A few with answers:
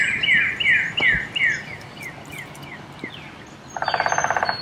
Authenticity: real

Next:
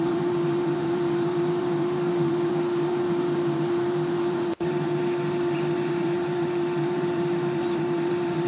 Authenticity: fake